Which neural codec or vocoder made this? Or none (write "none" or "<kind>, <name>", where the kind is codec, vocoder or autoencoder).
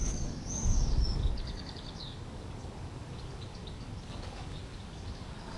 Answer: codec, DAC